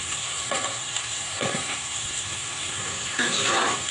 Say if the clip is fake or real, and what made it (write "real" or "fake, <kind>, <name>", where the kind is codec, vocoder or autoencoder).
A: fake, codec, SNAC